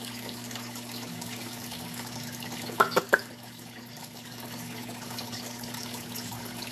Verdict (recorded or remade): remade